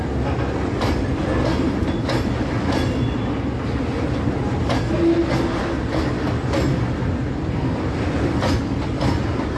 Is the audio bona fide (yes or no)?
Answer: yes